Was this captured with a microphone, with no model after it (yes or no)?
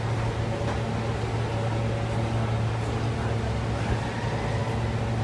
yes